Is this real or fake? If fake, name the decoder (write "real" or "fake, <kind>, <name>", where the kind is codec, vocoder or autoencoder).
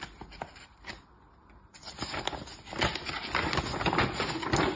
real